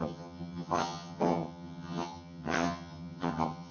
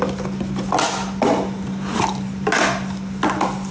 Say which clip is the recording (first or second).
second